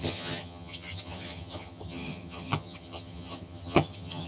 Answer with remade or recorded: remade